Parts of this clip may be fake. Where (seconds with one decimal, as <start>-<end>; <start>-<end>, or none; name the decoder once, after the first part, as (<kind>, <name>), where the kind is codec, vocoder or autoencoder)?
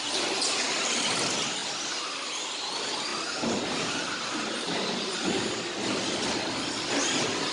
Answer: 3.1-5.5 (vocoder, BigVGAN v2)